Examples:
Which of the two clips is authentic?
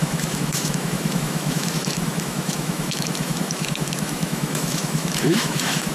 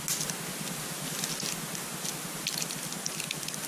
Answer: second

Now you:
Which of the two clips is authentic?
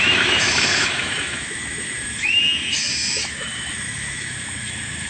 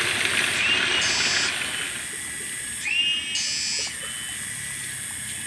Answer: second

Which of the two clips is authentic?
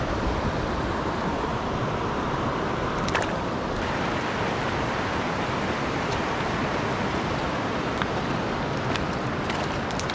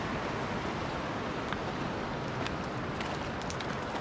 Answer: second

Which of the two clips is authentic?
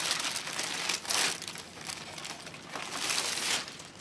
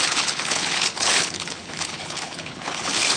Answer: first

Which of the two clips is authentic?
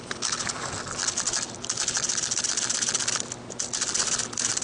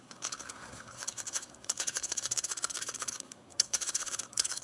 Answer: first